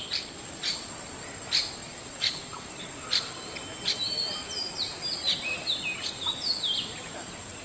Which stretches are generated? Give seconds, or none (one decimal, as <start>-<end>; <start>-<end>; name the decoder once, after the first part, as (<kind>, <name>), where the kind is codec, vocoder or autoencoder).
1.8-2.7 (vocoder, Vocos)